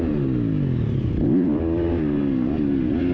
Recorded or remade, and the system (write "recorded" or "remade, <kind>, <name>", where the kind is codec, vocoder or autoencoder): recorded